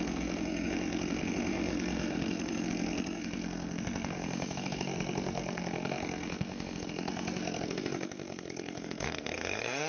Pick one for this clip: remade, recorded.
remade